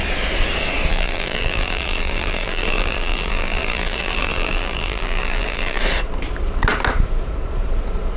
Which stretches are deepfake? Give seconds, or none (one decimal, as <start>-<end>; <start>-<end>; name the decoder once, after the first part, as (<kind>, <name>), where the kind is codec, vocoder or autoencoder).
0.9-5.8 (vocoder, BigVGAN v2)